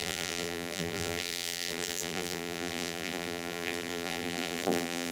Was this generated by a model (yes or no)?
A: yes